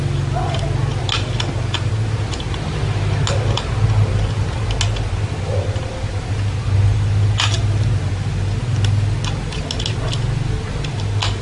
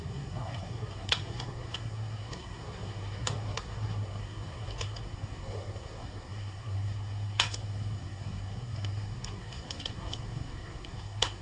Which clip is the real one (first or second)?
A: first